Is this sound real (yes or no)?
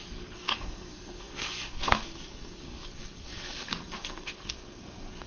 no